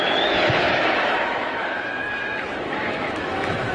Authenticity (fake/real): fake